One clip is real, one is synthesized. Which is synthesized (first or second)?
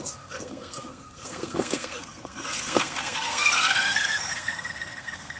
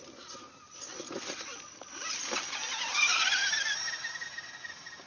first